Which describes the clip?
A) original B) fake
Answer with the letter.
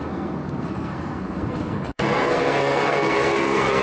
B